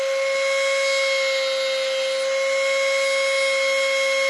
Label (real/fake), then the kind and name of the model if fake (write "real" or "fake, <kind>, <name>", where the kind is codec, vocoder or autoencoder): real